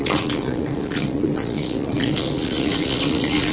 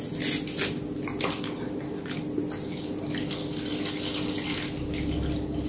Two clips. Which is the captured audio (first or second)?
second